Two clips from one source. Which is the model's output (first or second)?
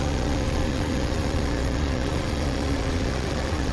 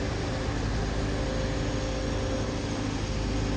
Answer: first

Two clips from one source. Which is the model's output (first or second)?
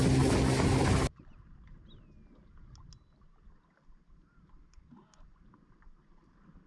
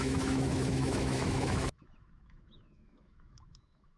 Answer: second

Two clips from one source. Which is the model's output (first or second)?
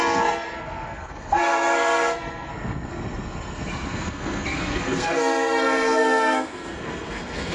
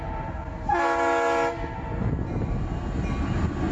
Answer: first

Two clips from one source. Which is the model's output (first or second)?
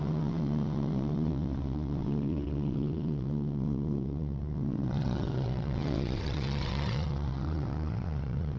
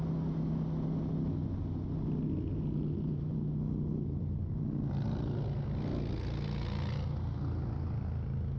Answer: first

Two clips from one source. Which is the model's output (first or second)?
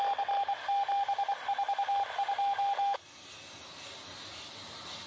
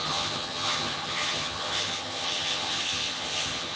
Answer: second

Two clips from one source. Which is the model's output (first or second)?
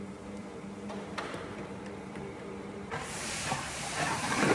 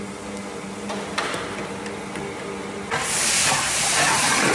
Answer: first